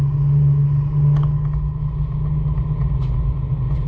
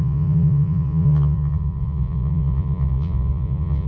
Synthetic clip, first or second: second